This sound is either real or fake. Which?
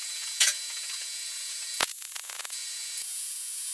fake